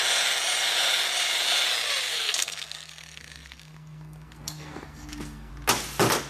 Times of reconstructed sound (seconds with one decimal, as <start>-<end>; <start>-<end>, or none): 2.1-5.5